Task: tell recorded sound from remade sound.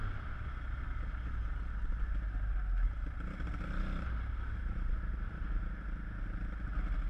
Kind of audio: recorded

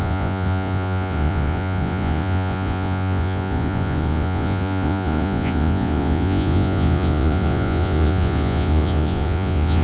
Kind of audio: remade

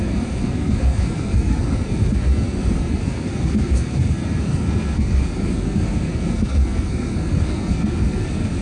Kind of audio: remade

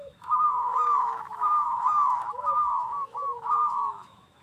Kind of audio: remade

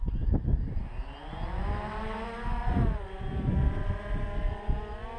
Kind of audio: recorded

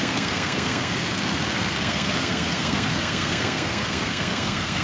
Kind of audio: remade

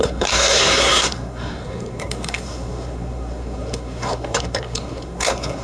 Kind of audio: remade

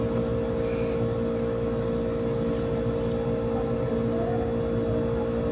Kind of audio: recorded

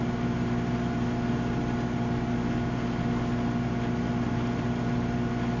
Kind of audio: recorded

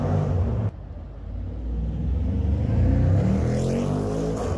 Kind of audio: recorded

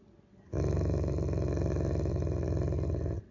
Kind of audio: recorded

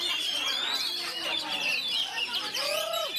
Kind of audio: remade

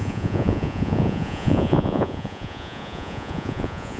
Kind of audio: remade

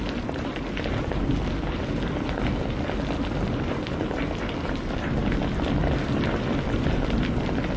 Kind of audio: recorded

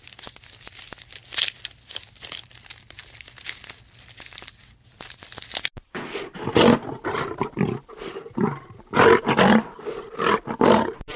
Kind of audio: recorded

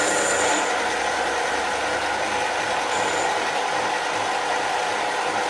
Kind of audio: recorded